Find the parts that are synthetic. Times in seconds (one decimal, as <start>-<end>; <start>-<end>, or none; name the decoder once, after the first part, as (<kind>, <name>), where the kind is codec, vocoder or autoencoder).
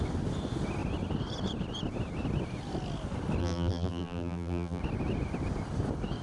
3.4-4.8 (vocoder, BigVGAN v2)